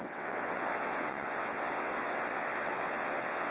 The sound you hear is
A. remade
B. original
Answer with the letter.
A